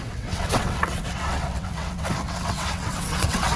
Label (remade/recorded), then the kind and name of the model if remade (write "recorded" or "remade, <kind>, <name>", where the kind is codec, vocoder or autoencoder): remade, vocoder, WaveNeXt